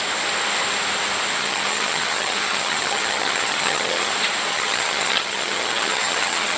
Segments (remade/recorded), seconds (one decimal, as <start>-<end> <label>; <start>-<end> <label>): 0.0-1.4 recorded; 1.4-4.1 remade; 4.1-4.5 recorded; 4.5-6.6 remade